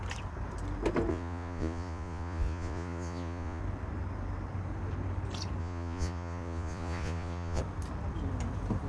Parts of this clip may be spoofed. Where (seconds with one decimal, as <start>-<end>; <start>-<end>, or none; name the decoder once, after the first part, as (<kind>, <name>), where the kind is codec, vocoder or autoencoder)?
1.1-3.6 (vocoder, Vocos); 5.6-7.6